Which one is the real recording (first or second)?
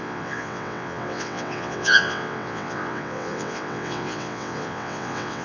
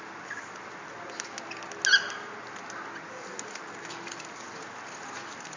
second